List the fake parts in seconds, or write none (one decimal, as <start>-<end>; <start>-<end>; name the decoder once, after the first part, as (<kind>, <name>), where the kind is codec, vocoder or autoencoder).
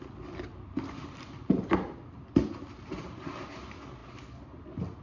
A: none